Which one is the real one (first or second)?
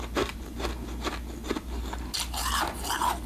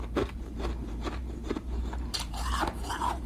first